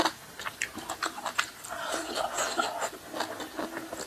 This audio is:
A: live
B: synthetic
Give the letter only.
A